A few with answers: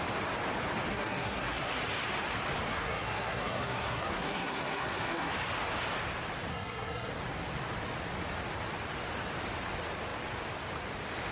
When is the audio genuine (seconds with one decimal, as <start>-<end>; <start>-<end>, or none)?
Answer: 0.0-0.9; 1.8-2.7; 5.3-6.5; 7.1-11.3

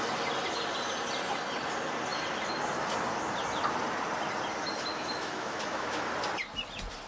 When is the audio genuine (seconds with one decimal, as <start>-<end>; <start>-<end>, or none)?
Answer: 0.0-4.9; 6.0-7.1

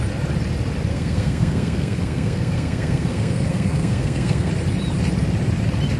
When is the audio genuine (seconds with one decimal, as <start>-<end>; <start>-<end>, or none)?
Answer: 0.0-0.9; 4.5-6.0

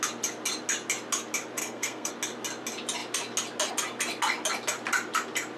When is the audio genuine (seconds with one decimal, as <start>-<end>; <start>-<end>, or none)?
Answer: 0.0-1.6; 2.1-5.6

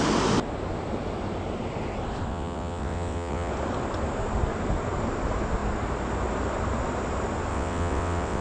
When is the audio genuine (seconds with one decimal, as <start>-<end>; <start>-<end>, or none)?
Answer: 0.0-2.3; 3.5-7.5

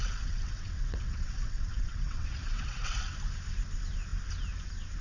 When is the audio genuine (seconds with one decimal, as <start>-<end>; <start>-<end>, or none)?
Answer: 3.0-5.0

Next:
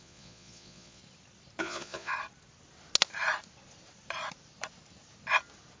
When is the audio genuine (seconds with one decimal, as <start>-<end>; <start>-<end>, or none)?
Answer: 1.0-1.6; 2.1-5.8